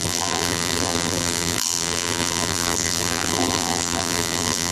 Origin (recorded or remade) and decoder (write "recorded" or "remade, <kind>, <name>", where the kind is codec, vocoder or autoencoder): remade, vocoder, BigVGAN v2